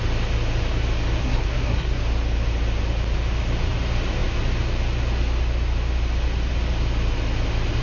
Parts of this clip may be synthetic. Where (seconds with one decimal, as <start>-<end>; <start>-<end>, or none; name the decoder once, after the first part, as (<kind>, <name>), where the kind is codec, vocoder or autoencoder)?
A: 1.2-2.0 (codec, SNAC)